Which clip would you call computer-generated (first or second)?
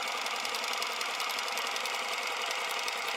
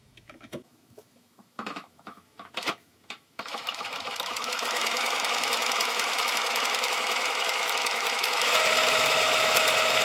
second